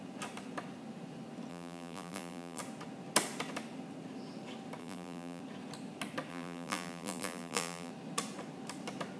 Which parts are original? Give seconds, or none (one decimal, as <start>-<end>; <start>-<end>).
0.0-1.5; 2.6-4.8; 5.4-6.3; 7.9-9.2